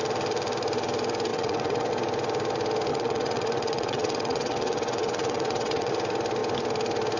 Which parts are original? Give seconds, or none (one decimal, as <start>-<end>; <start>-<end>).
0.0-1.3; 1.9-2.9; 5.9-7.2